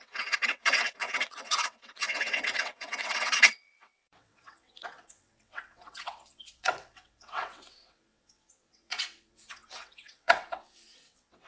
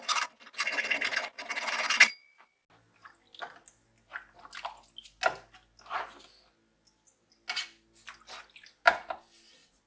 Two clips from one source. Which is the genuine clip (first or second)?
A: second